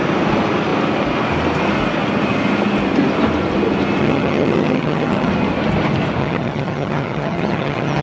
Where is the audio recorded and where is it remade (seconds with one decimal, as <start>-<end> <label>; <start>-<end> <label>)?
0.0-4.0 recorded; 4.0-5.3 remade; 5.3-6.2 recorded; 6.2-8.0 remade

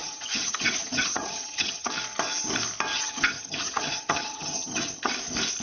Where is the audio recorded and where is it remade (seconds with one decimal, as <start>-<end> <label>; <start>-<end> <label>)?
0.0-1.9 remade; 1.9-2.9 recorded; 2.9-5.1 remade; 5.1-5.6 recorded

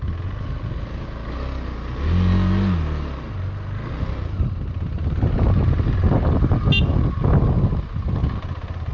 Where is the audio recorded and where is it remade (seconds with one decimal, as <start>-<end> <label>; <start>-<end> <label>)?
0.0-8.9 recorded

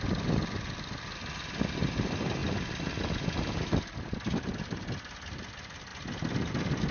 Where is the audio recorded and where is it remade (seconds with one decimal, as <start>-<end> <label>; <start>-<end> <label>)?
0.0-6.9 recorded

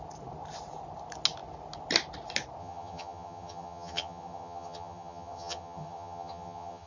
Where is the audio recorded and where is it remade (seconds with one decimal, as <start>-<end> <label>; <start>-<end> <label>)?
0.0-2.6 recorded; 2.6-6.9 remade

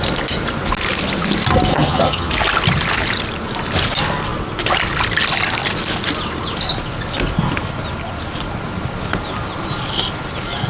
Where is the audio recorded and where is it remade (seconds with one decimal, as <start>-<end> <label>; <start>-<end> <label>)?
0.0-1.7 recorded; 1.7-2.3 remade; 2.3-10.7 recorded

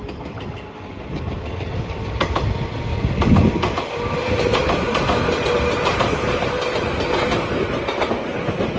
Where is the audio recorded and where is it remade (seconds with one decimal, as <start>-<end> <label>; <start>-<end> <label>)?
0.0-8.8 recorded

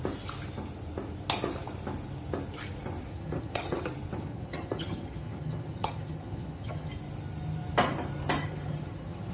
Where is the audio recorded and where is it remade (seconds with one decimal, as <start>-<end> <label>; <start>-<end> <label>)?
0.0-3.1 recorded; 3.1-3.8 remade; 3.8-4.3 recorded; 4.3-6.9 remade; 6.9-8.4 recorded; 8.4-9.3 remade